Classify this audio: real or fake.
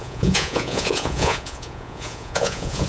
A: fake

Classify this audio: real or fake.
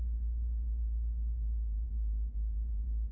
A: real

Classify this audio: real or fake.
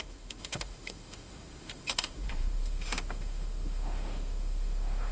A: fake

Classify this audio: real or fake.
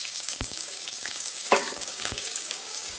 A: fake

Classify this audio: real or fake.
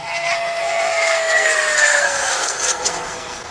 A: fake